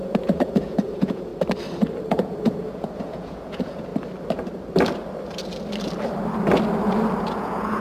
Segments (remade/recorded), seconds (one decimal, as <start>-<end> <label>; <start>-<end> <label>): 0.0-1.3 remade; 1.3-2.1 recorded; 2.1-3.9 remade; 3.9-7.2 recorded; 7.2-7.8 remade

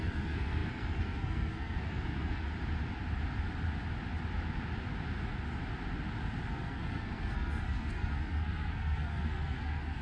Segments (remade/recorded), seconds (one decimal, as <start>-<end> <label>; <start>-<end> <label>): 0.0-2.4 remade; 2.4-6.5 recorded; 6.5-10.0 remade

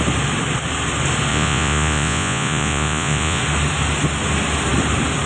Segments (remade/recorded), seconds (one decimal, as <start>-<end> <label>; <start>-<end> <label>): 0.0-1.3 recorded; 1.3-3.4 remade; 3.4-5.3 recorded

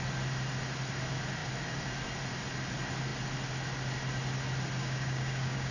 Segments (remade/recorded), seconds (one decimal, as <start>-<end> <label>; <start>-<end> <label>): 0.0-4.8 recorded; 4.8-5.7 remade

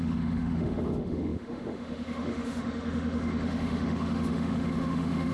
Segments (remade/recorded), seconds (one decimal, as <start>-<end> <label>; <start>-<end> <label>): 0.0-5.3 remade

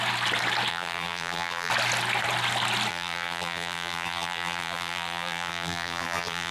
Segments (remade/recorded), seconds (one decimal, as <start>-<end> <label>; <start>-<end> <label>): 0.0-0.7 recorded; 0.7-1.7 remade; 1.7-2.9 recorded; 2.9-6.5 remade

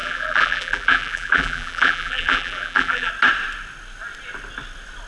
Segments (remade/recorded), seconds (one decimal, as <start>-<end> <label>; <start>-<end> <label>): 0.0-3.1 remade; 3.1-5.1 recorded

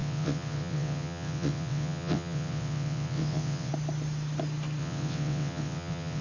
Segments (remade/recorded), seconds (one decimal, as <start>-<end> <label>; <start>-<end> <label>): 0.0-3.7 remade; 3.7-4.8 recorded; 4.8-6.2 remade